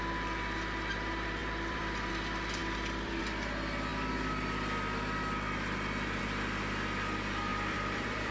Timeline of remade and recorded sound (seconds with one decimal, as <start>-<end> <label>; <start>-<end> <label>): 0.0-1.4 recorded; 1.4-2.1 remade; 2.1-2.6 recorded; 2.6-3.2 remade; 3.2-7.5 recorded; 7.5-8.3 remade